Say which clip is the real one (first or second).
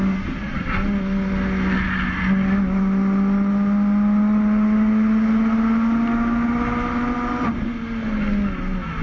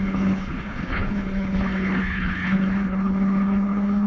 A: first